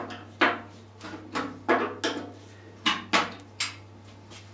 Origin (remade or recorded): recorded